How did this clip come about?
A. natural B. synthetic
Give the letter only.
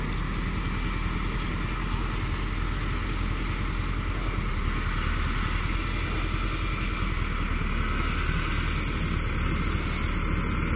A